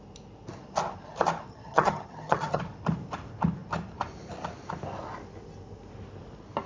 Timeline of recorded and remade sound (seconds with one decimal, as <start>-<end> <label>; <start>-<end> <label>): 0.0-1.5 recorded; 1.5-2.6 remade; 2.6-6.7 recorded